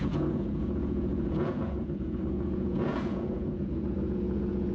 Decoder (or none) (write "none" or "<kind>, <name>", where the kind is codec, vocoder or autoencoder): vocoder, Vocos